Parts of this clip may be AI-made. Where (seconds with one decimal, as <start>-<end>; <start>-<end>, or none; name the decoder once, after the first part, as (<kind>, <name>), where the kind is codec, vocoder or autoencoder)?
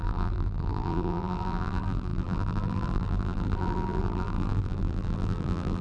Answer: 0.0-5.8 (vocoder, BigVGAN v2)